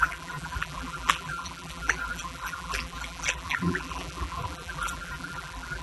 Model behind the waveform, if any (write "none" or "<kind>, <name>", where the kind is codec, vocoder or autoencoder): vocoder, BigVGAN v2